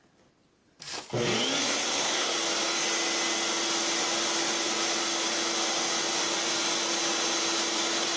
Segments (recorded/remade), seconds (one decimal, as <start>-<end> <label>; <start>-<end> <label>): 0.0-1.6 recorded; 1.6-2.3 remade; 2.3-8.2 recorded